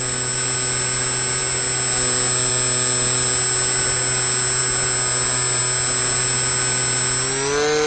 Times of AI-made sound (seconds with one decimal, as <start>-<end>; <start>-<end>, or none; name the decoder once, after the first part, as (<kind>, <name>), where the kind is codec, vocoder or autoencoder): none